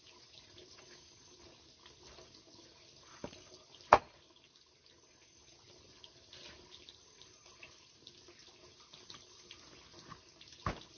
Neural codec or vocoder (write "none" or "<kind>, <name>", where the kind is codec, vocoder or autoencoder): none